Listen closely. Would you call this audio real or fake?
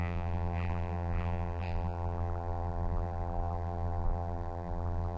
fake